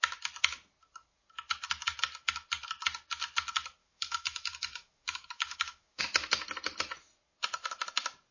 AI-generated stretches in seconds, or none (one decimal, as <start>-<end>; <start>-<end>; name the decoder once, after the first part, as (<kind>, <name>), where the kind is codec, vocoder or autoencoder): 3.8-6.0 (autoencoder, DAC-VAE)